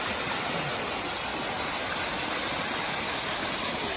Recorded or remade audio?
recorded